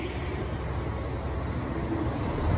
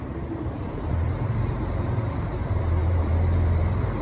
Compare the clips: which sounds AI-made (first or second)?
second